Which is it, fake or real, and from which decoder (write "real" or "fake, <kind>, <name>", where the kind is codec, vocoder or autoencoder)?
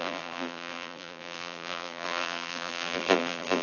fake, vocoder, BigVGAN v2